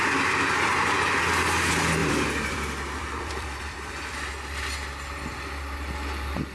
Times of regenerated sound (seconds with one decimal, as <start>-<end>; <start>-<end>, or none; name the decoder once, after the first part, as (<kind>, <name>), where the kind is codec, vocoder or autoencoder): 2.0-4.3 (vocoder, BigVGAN v2)